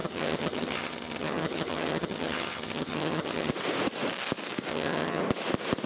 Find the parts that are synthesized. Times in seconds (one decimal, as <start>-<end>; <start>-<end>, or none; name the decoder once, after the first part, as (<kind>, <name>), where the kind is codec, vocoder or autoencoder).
0.0-3.5 (vocoder, HiFi-GAN); 4.7-5.2